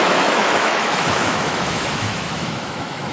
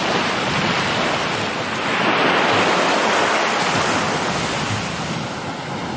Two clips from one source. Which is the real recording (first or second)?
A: second